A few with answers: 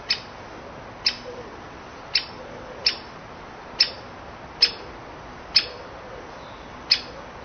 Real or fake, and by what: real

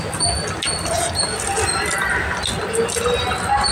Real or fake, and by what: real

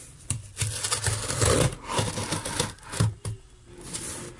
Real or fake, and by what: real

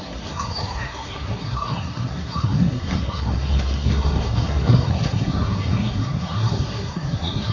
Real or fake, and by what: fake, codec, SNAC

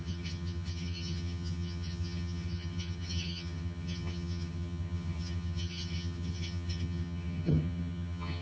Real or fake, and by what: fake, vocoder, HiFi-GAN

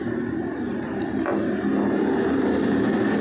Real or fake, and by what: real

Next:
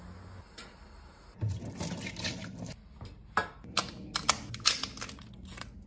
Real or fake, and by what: real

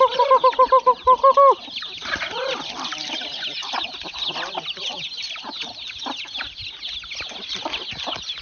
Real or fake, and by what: real